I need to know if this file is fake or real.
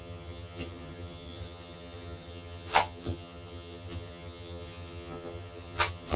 fake